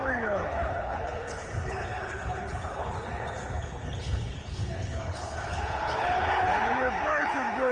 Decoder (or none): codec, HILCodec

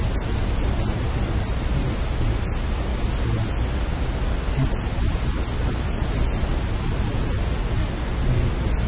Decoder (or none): none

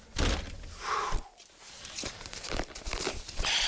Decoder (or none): vocoder, BigVGAN v2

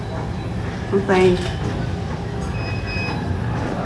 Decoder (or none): none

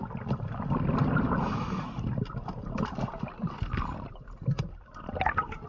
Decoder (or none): none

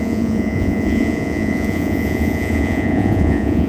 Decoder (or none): vocoder, Vocos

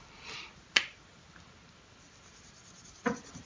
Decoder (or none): none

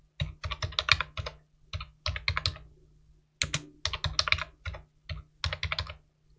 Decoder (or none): none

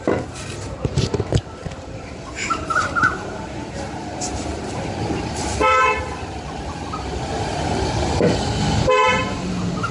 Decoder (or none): vocoder, BigVGAN v2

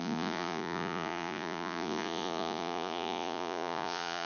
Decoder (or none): vocoder, Vocos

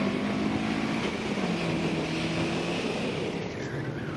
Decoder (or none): none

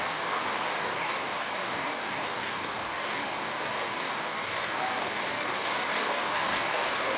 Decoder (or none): codec, DAC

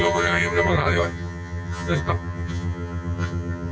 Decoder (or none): vocoder, HiFi-GAN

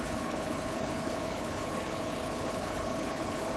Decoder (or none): codec, HILCodec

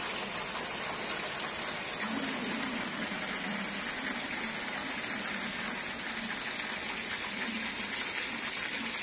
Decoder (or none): none